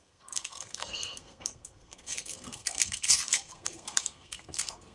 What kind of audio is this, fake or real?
fake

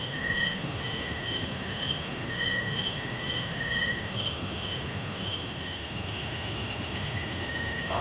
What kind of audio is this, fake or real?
fake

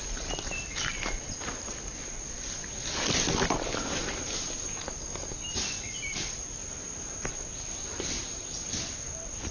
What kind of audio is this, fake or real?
real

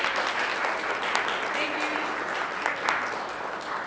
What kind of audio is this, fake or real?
real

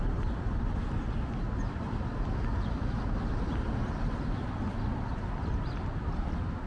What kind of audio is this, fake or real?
real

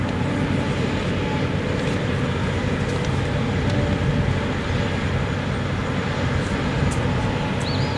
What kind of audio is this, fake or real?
real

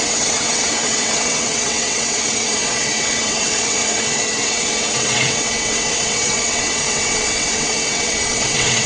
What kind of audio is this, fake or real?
fake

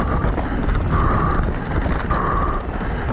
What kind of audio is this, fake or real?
real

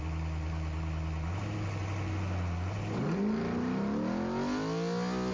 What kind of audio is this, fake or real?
real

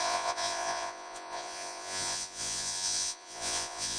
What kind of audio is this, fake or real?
fake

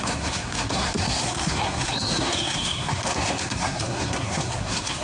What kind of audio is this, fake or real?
fake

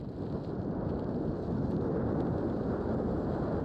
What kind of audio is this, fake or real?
real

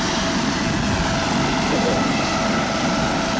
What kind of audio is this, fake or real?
real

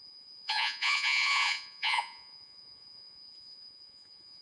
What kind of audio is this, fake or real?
fake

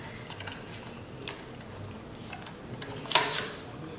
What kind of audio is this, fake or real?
real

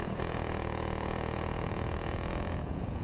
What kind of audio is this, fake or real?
fake